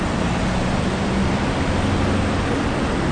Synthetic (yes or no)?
no